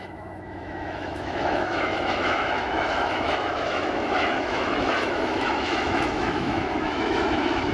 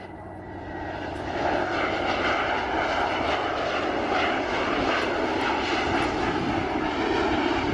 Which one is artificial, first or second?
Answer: first